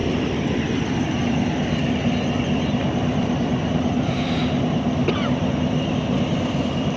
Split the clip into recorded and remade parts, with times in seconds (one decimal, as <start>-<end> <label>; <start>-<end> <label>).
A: 0.0-7.0 recorded